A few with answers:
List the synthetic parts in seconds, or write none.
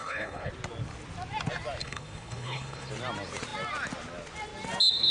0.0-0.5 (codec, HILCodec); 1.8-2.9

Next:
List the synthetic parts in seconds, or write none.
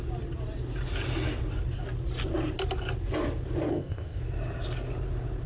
3.7-4.2 (codec, ZipCodec)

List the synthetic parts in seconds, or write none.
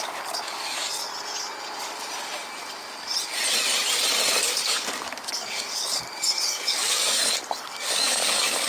0.0-1.1 (codec, DAC); 4.4-8.7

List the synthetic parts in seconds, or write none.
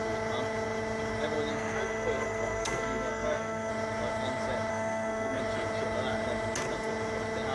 1.5-3.7 (codec, SNAC); 4.7-5.4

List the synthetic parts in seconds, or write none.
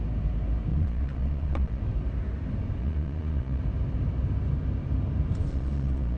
0.7-1.8 (vocoder, Vocos); 2.8-3.6; 5.5-6.2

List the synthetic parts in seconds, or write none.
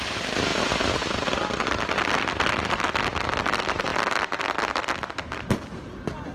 0.5-3.2 (vocoder, BigVGAN v2)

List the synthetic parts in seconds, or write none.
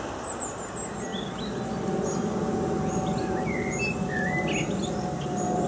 none